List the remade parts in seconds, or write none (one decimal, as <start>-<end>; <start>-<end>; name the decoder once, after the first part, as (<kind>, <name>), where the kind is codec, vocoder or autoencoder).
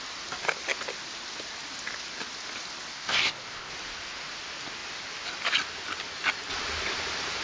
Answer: 2.9-3.7 (codec, ZipCodec)